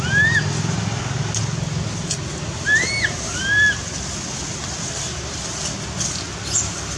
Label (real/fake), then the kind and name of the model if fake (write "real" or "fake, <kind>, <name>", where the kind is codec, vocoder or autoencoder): real